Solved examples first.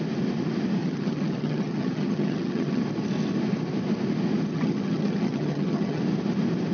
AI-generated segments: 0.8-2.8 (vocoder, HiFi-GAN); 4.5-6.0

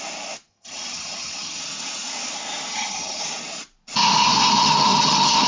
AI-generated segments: 0.5-1.6 (vocoder, HiFi-GAN); 2.7-3.2; 4.6-5.5

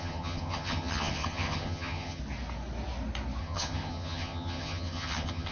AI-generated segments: 0.0-2.2 (vocoder, HiFi-GAN); 3.4-5.5

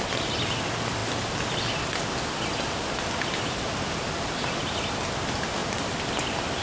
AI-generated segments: none